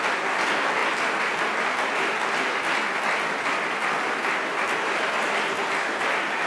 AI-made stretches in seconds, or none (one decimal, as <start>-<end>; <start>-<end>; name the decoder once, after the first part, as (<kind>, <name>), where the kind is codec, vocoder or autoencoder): none